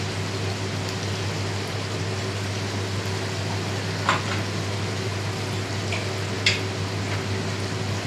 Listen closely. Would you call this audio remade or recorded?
recorded